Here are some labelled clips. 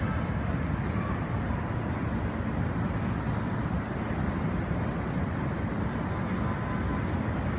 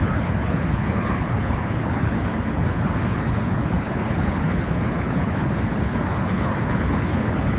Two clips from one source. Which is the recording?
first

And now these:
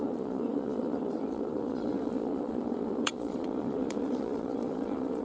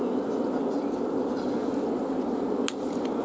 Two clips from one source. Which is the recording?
second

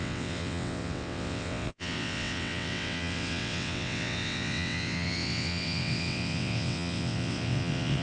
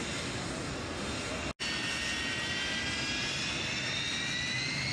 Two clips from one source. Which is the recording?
second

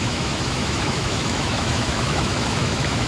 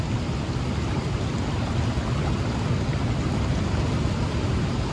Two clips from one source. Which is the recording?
second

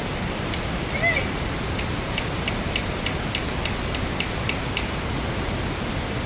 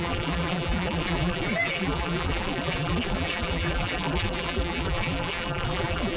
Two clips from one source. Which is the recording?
first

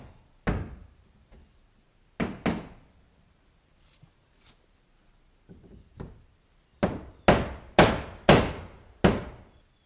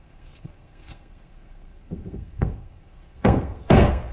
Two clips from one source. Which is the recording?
first